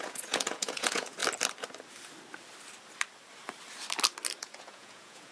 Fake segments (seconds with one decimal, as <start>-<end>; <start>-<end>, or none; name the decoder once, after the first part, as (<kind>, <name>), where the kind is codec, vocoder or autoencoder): 0.0-1.2 (vocoder, Vocos); 4.4-5.3